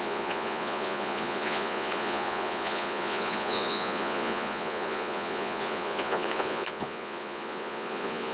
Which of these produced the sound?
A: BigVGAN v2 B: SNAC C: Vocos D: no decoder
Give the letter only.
C